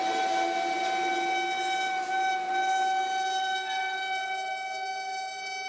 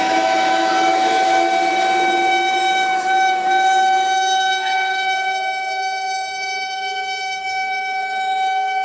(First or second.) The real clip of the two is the first